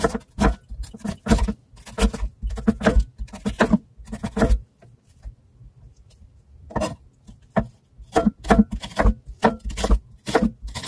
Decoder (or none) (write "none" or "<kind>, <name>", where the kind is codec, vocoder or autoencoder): none